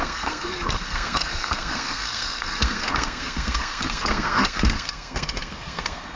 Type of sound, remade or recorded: remade